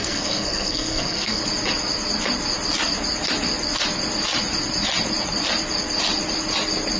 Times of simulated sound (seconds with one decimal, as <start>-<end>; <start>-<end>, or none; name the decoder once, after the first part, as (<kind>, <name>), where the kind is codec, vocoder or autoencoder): 0.0-1.4 (codec, SNAC)